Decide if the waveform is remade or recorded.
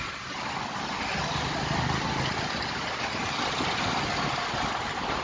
recorded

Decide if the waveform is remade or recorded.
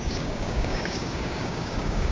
remade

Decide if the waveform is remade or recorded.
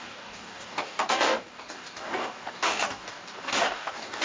remade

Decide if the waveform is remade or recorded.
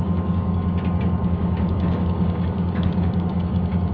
remade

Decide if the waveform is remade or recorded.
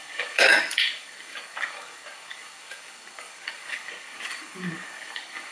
remade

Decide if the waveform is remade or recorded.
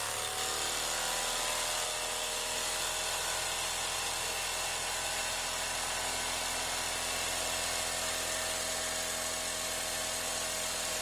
recorded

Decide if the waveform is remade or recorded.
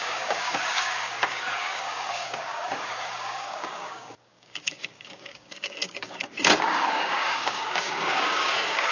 remade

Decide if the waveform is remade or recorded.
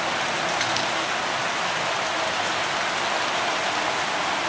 recorded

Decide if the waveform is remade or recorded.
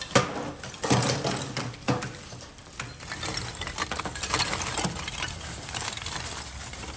recorded